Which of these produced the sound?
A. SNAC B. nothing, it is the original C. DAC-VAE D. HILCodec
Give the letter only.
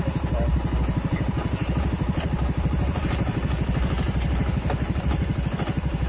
B